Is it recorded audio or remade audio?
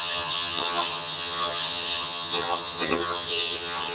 remade